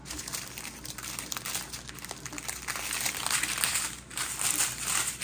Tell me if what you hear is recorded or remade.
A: recorded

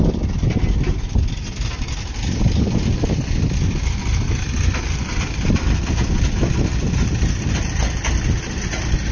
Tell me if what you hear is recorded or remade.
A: recorded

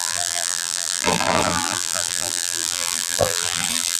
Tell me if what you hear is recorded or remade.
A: remade